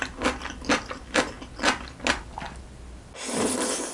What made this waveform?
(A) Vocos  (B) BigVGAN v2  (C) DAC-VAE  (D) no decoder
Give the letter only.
D